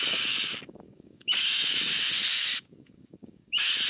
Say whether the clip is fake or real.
fake